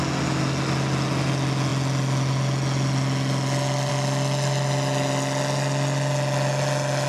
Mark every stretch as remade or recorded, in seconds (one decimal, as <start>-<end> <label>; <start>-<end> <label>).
0.0-7.1 recorded

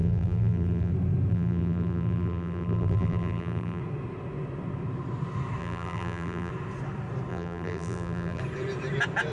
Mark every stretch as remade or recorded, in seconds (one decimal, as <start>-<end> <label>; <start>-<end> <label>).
0.0-0.9 remade; 0.9-1.3 recorded; 1.3-3.8 remade; 3.8-5.6 recorded; 5.6-6.5 remade; 6.5-7.3 recorded; 7.3-8.4 remade; 8.4-9.3 recorded

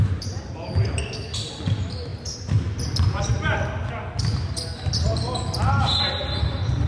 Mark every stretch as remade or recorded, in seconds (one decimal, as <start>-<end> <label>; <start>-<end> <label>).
0.0-6.9 recorded

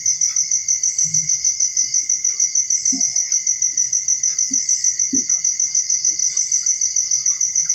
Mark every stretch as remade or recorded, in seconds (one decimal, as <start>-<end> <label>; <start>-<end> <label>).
0.0-7.7 recorded

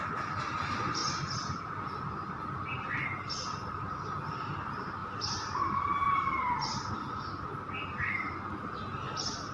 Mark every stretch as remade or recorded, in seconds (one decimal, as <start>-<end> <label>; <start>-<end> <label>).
0.0-5.0 recorded; 5.0-6.9 remade; 6.9-9.5 recorded